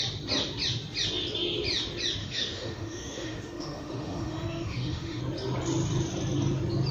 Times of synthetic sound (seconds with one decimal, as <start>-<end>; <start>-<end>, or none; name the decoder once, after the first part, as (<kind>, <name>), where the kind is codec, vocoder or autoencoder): 2.2-5.2 (autoencoder, DAC-VAE)